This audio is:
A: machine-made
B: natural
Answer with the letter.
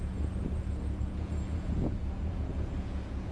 A